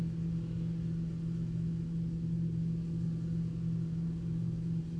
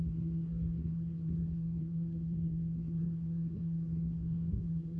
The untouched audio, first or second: first